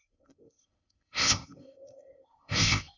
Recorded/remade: remade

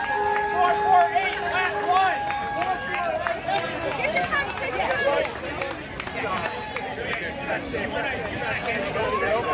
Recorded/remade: recorded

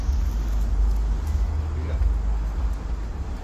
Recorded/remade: recorded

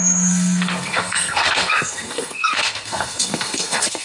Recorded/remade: remade